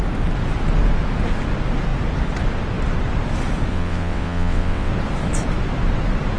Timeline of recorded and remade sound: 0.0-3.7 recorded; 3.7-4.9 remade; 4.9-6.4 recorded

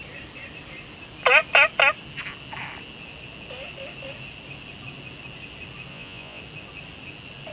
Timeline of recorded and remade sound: 0.0-5.9 recorded; 5.9-6.4 remade; 6.4-7.5 recorded